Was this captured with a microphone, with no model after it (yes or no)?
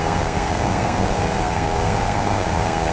no